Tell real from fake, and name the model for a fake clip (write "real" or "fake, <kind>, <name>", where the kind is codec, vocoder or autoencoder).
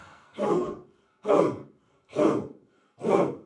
fake, codec, SNAC